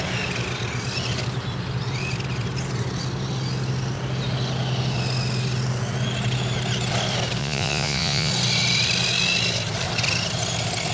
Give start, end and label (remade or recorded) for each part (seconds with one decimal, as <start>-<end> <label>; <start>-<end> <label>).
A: 0.0-7.4 recorded; 7.4-8.3 remade; 8.3-10.9 recorded